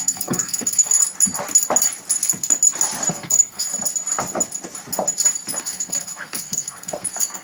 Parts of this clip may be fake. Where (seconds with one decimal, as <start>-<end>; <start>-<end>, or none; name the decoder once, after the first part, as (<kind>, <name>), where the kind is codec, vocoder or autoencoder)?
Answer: 0.0-1.0 (codec, SNAC); 3.1-3.7; 5.6-7.4